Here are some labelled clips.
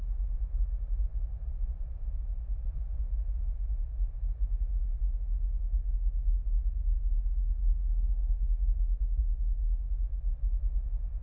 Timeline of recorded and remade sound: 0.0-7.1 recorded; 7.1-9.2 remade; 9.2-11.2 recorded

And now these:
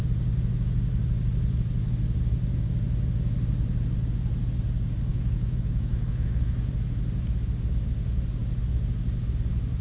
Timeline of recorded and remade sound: 0.0-5.1 recorded; 5.1-6.7 remade; 6.7-9.8 recorded

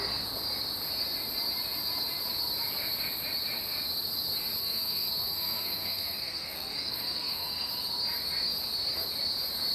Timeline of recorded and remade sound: 0.0-4.6 recorded; 4.6-7.7 remade; 7.7-9.7 recorded

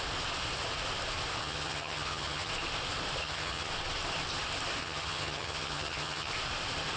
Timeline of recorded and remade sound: 0.0-1.4 recorded; 1.4-2.5 remade; 2.5-3.2 recorded; 3.2-3.7 remade; 3.7-4.8 recorded; 4.8-6.3 remade; 6.3-7.0 recorded

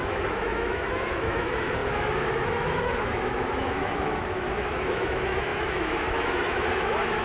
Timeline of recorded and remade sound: 0.0-7.2 remade

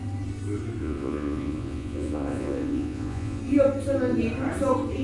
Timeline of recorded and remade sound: 0.0-0.8 recorded; 0.8-3.4 remade; 3.4-5.0 recorded

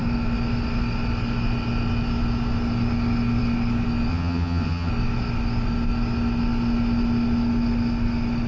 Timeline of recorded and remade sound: 0.0-4.1 recorded; 4.1-4.9 remade; 4.9-8.5 recorded